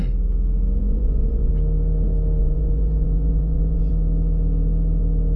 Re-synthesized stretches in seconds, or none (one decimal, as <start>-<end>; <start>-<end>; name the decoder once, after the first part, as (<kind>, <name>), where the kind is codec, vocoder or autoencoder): 0.8-1.5 (vocoder, Vocos); 2.4-3.9